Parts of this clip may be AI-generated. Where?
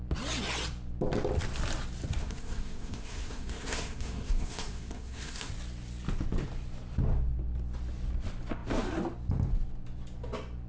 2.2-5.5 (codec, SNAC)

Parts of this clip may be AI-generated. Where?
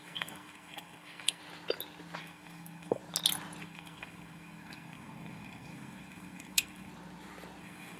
0.0-1.4 (codec, SNAC); 2.2-3.0; 3.6-6.9; 7.6-8.0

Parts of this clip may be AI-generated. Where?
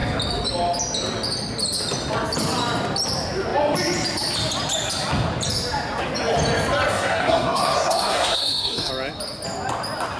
6.9-8.9 (codec, SNAC)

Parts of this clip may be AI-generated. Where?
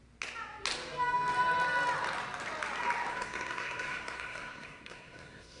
3.1-5.6 (codec, SNAC)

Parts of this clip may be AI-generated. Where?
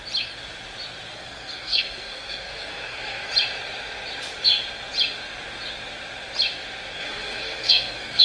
1.1-3.3 (codec, SNAC); 7.0-8.2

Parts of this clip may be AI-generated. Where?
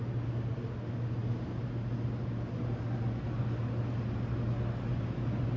none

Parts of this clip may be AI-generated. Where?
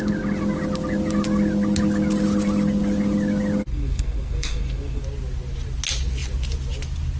3.7-5.0 (codec, SNAC)